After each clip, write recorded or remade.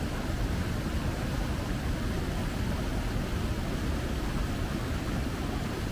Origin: recorded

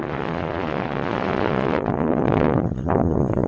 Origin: remade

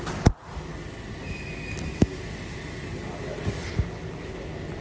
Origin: recorded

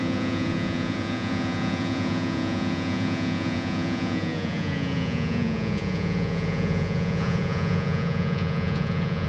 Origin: remade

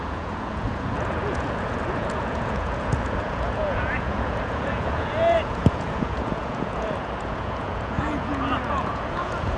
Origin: remade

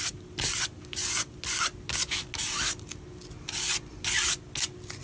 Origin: recorded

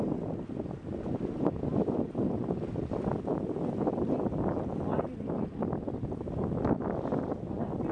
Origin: recorded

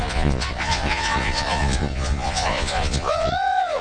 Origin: remade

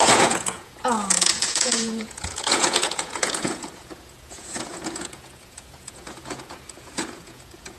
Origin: remade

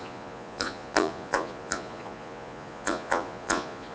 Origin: remade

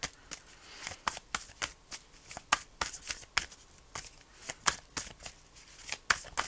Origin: recorded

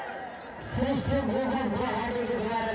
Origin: recorded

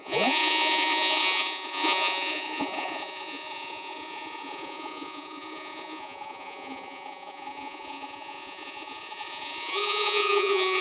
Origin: remade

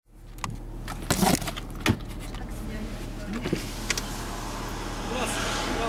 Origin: recorded